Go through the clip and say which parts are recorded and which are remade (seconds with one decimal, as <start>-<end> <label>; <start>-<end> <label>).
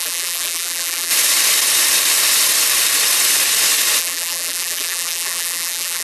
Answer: 0.0-1.1 remade; 1.1-4.0 recorded; 4.0-6.0 remade